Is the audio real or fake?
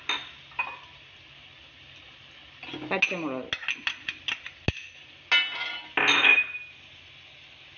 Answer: real